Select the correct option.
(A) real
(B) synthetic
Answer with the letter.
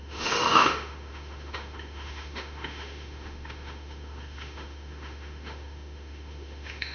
B